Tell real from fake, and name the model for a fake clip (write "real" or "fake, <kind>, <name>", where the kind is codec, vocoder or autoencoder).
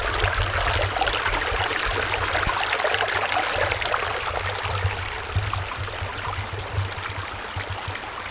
real